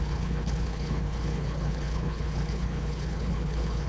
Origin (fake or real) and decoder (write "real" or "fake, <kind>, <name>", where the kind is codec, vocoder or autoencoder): fake, codec, HILCodec